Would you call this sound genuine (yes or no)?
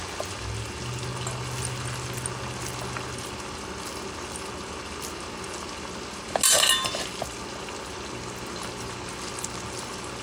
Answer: yes